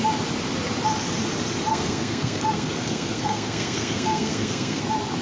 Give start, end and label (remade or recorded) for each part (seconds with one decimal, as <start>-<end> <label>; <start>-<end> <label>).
0.0-1.7 recorded; 1.7-4.8 remade; 4.8-5.2 recorded